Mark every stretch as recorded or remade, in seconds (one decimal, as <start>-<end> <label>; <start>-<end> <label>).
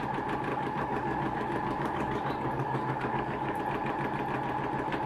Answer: 0.0-0.5 recorded; 0.5-3.6 remade; 3.6-5.1 recorded